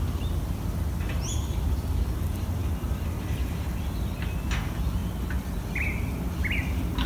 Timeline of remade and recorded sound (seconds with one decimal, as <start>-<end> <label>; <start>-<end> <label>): 0.0-2.6 recorded; 2.6-3.6 remade; 3.6-5.0 recorded; 5.0-5.8 remade; 5.8-7.1 recorded